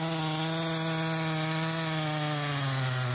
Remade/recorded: recorded